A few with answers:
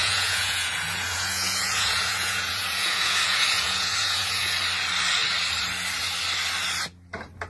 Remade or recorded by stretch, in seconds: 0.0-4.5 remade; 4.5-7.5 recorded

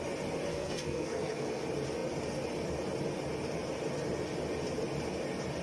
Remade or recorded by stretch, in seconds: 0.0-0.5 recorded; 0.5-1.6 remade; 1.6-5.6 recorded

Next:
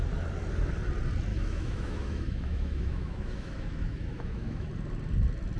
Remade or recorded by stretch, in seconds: 0.0-1.3 recorded; 1.3-4.7 remade; 4.7-5.6 recorded

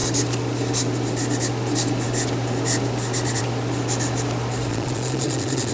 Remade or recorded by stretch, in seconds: 0.0-4.7 recorded; 4.7-5.7 remade

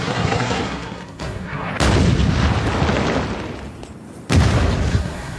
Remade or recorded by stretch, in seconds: 0.0-1.7 remade; 1.7-4.9 recorded; 4.9-5.4 remade

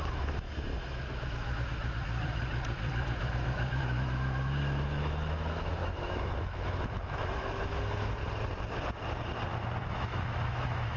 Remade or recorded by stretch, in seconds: 0.0-2.1 remade; 2.1-3.2 recorded; 3.2-8.2 remade; 8.2-9.8 recorded; 9.8-11.0 remade

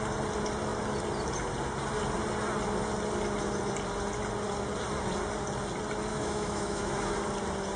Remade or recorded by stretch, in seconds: 0.0-6.1 recorded; 6.1-7.2 remade; 7.2-7.8 recorded

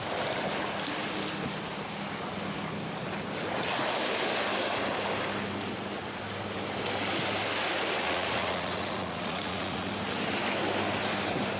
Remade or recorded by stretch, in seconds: 0.0-8.0 recorded; 8.0-9.9 remade; 9.9-11.6 recorded